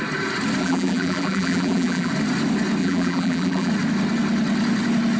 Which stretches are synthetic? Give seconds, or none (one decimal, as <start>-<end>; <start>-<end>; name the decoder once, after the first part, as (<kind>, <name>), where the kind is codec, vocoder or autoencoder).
0.6-2.1 (vocoder, BigVGAN v2); 2.8-3.7